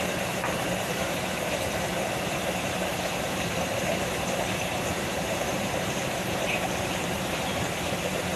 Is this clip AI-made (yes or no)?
yes